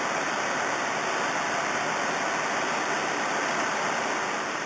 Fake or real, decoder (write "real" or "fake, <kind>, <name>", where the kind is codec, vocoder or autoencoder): real